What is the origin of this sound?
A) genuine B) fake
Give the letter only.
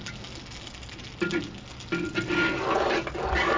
A